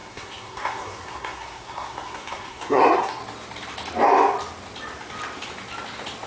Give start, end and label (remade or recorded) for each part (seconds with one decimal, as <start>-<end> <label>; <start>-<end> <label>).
0.0-3.2 remade; 3.2-6.3 recorded